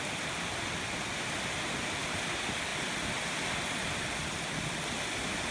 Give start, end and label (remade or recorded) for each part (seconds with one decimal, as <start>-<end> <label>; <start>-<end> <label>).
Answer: 0.0-5.5 recorded